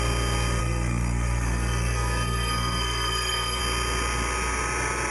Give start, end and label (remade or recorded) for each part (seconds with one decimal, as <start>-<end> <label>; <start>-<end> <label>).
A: 0.0-0.6 recorded; 0.6-3.6 remade; 3.6-5.1 recorded